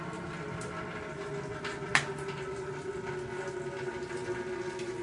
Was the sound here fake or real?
real